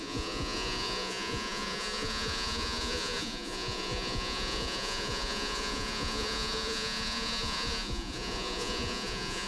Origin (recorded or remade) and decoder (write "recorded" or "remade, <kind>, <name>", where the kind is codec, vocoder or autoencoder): remade, vocoder, Vocos